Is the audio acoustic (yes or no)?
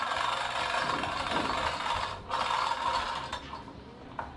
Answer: yes